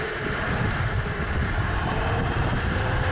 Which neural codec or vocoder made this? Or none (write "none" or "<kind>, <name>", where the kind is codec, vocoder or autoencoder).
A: vocoder, BigVGAN v2